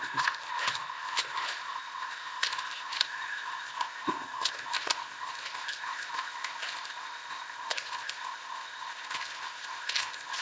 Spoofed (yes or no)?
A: yes